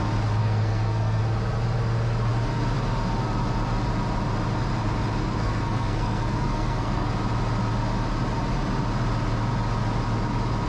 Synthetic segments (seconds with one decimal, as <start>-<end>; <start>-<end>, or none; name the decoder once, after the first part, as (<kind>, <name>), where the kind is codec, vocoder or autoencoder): 0.4-1.2 (codec, SNAC); 5.2-7.1